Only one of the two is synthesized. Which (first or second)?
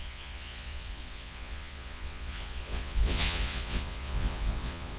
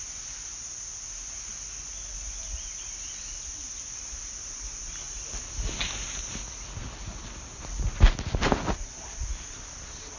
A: first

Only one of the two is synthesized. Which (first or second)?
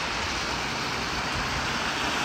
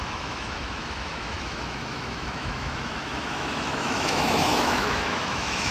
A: second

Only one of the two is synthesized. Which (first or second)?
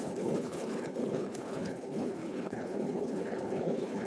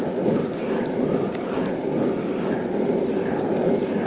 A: first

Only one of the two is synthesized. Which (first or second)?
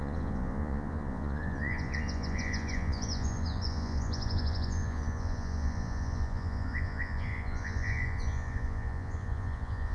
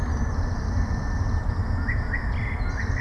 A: first